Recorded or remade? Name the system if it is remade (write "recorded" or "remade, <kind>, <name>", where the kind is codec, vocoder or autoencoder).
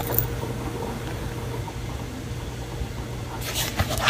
recorded